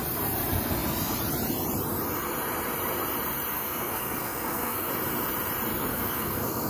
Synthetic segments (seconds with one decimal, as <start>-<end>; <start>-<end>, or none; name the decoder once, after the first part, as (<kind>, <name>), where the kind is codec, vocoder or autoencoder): 3.5-4.9 (codec, SNAC); 5.9-6.7